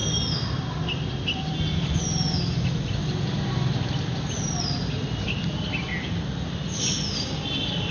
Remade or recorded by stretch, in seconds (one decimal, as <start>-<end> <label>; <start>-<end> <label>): 0.0-7.9 recorded